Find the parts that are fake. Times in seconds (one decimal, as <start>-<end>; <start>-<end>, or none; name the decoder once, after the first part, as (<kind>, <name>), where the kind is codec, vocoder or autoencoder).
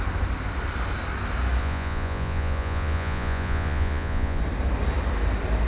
1.6-4.4 (vocoder, Vocos)